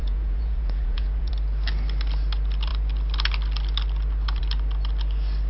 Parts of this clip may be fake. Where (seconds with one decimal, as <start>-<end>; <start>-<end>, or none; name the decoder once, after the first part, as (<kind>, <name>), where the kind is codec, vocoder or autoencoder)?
0.0-1.3 (vocoder, Vocos)